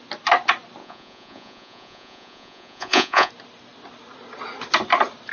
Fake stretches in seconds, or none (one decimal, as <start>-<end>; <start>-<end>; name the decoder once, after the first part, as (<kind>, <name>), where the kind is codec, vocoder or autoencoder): 0.8-3.3 (vocoder, Vocos)